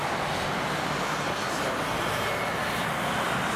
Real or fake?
real